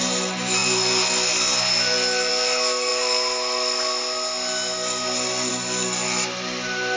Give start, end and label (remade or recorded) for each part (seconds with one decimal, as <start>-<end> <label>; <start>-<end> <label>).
0.0-7.0 recorded